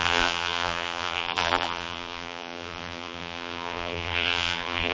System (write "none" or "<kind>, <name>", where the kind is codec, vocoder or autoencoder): vocoder, BigVGAN v2